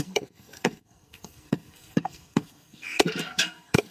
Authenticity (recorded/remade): remade